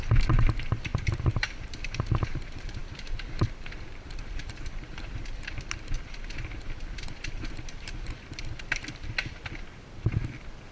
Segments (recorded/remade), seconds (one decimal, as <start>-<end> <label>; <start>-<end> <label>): 0.0-0.9 recorded; 0.9-2.0 remade; 2.0-2.8 recorded; 2.8-7.9 remade; 7.9-10.7 recorded